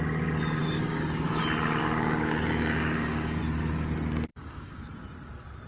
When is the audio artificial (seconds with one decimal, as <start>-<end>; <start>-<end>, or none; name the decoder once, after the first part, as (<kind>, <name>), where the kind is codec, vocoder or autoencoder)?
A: 0.6-1.4 (codec, DAC); 1.8-3.4; 4.3-4.8